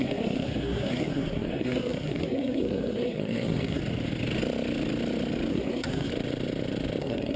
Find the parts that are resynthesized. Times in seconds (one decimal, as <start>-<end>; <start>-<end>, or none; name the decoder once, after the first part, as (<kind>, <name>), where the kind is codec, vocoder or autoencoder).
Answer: 0.0-3.8 (codec, SNAC); 5.5-6.1; 7.0-7.4